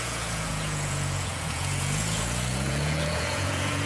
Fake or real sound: fake